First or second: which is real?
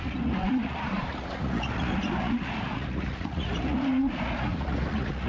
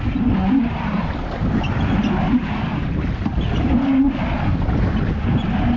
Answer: second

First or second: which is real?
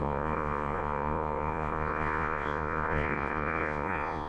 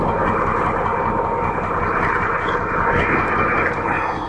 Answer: second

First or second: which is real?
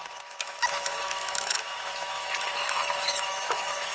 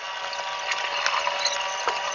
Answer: second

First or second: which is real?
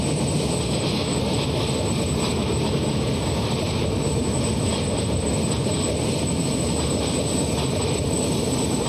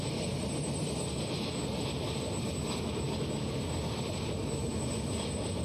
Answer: second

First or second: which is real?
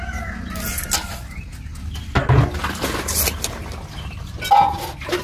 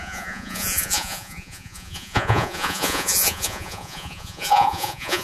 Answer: first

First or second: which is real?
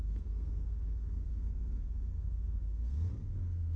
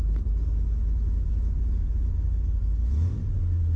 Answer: second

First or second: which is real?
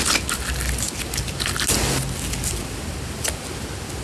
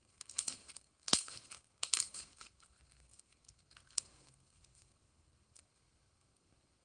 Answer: first